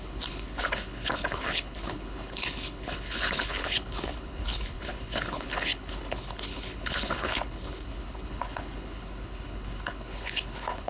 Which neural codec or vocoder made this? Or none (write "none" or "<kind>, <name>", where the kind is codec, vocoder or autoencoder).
codec, HILCodec